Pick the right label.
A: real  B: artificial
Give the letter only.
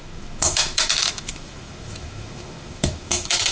B